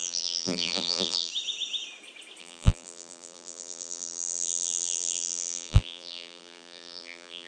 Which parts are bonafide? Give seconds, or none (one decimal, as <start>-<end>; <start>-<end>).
1.3-2.4